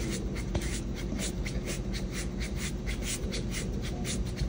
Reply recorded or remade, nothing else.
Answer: remade